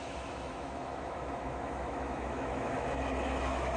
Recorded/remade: remade